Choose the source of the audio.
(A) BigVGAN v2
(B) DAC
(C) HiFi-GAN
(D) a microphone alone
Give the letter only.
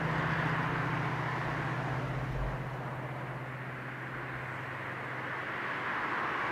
D